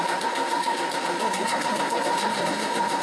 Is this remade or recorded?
remade